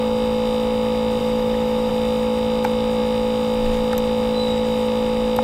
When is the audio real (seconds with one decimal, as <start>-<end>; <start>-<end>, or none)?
0.0-1.2; 1.9-5.4